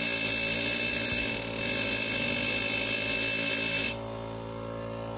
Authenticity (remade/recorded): recorded